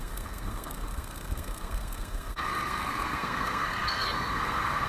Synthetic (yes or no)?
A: yes